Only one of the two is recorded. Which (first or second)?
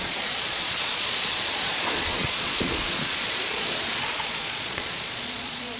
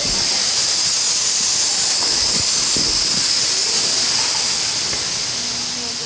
second